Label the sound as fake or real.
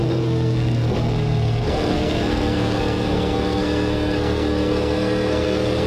fake